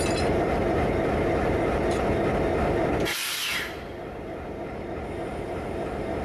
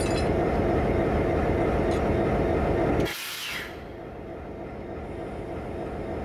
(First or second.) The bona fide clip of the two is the second